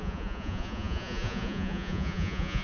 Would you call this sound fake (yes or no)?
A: yes